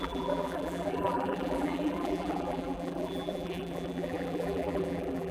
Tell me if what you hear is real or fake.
fake